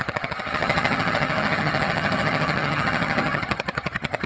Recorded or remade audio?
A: remade